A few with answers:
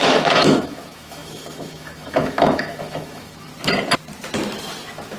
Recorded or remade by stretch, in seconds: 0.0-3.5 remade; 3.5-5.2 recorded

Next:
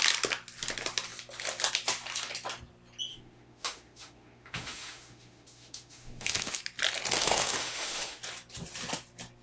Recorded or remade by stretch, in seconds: 0.0-3.1 recorded; 3.1-6.6 remade; 6.6-7.2 recorded; 7.2-8.2 remade; 8.2-9.4 recorded

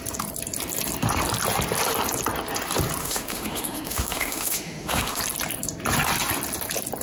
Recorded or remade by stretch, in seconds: 0.0-3.0 recorded; 3.0-5.2 remade; 5.2-7.0 recorded

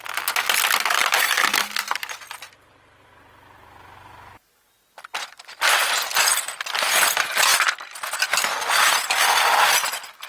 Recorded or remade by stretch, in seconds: 0.0-10.3 recorded

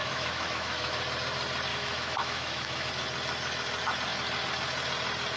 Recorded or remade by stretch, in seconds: 0.0-1.0 remade; 1.0-1.7 recorded; 1.7-2.9 remade; 2.9-5.4 recorded

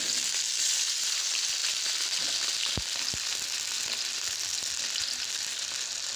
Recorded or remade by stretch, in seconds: 0.0-6.2 recorded

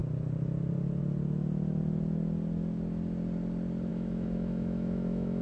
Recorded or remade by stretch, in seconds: 0.0-3.9 recorded; 3.9-5.4 remade